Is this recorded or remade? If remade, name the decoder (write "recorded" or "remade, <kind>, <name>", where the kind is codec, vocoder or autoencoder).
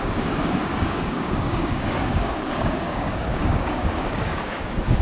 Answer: remade, codec, DAC